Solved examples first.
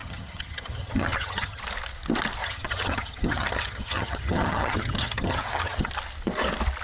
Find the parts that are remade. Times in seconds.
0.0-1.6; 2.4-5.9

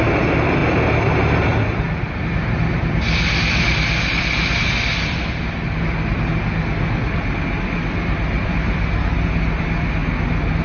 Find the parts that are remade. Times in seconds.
0.0-6.3; 7.6-10.0

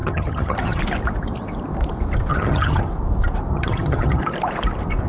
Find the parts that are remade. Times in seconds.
0.0-0.8; 2.3-2.9; 3.5-4.2

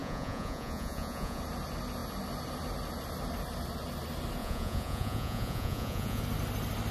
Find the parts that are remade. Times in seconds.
0.0-1.4; 4.4-6.2

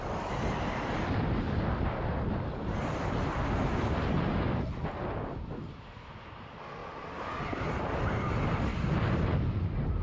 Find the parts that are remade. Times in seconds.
none

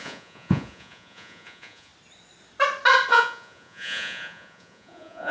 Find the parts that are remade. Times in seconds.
0.0-1.9; 3.1-5.3

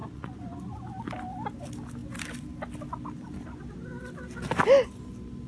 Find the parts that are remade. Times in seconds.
0.0-0.9

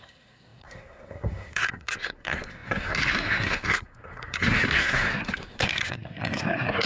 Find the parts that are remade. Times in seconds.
0.0-6.9